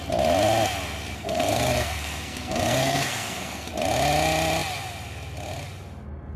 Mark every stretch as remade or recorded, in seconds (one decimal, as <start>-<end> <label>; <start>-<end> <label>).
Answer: 0.0-1.1 recorded; 1.1-3.7 remade; 3.7-6.4 recorded